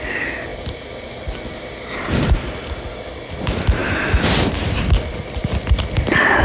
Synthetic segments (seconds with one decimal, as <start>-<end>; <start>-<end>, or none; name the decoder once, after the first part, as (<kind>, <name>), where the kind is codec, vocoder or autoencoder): none